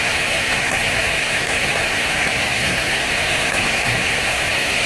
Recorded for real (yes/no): no